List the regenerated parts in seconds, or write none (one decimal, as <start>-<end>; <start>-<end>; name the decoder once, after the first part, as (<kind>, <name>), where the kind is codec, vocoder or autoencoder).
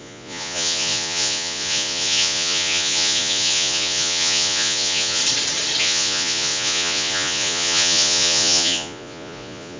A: 0.0-5.2 (vocoder, Vocos); 5.8-9.8